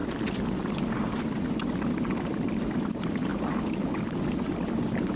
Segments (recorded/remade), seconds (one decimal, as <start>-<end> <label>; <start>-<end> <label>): 0.0-5.2 recorded